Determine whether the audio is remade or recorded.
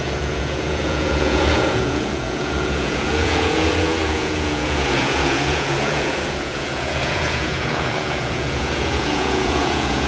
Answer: remade